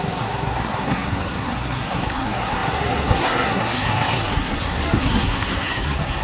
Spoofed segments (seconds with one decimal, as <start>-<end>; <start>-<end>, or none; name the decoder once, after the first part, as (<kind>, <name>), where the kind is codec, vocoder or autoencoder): 0.0-6.2 (codec, SNAC)